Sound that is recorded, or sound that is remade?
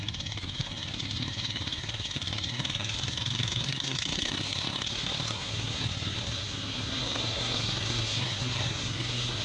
remade